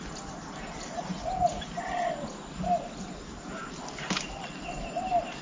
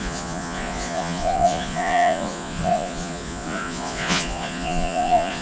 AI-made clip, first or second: second